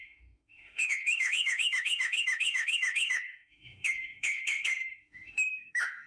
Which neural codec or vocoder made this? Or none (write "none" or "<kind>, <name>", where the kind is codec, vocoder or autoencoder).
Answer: autoencoder, DAC-VAE